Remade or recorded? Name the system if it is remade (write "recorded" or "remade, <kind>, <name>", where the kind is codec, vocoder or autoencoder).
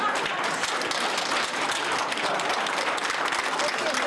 recorded